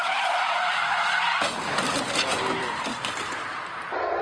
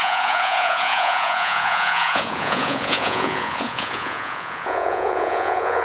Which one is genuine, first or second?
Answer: first